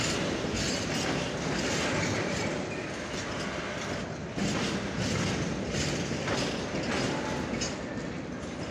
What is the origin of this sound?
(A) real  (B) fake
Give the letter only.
A